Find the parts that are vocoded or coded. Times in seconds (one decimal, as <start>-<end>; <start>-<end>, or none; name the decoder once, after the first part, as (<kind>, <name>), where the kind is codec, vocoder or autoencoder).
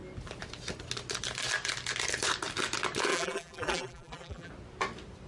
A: 3.1-4.5 (vocoder, BigVGAN v2)